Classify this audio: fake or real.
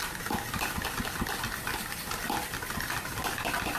real